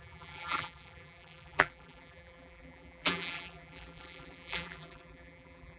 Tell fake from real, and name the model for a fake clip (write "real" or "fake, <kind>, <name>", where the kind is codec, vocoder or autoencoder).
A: fake, vocoder, BigVGAN v2